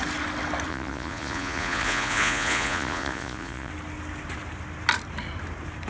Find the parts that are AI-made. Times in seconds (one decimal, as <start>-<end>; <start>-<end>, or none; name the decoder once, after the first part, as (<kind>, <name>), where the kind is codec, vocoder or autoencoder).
0.7-3.7 (vocoder, Vocos)